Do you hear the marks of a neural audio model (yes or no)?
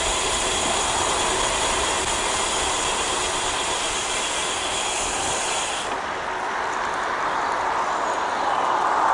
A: no